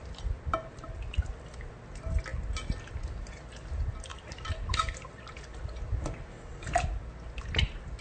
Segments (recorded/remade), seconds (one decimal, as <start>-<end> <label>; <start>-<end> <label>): 0.0-0.7 recorded; 0.7-1.6 remade; 1.6-4.1 recorded; 4.1-5.3 remade; 5.3-8.0 recorded